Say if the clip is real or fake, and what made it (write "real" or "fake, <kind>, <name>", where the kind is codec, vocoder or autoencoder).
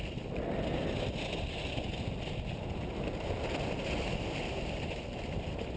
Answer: real